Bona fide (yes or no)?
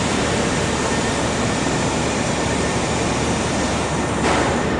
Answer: no